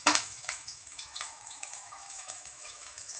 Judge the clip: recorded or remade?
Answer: remade